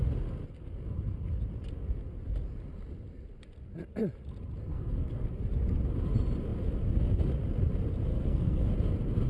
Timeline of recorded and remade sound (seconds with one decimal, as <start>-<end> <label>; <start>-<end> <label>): 0.0-4.7 recorded; 4.7-5.3 remade; 5.3-8.1 recorded; 8.1-8.7 remade; 8.7-9.3 recorded